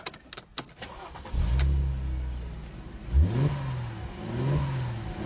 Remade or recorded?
recorded